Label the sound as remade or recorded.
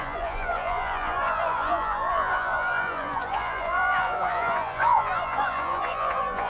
remade